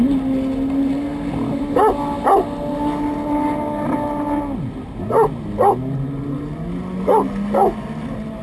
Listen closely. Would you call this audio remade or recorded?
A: recorded